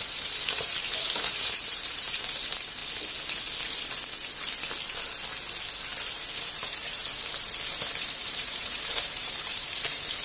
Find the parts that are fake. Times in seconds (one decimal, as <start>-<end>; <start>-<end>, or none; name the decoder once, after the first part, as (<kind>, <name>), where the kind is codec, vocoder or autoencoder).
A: 0.0-2.8 (vocoder, BigVGAN v2); 6.1-7.0; 8.0-10.2